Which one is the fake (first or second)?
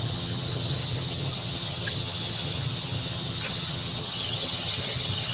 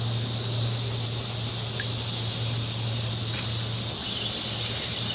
first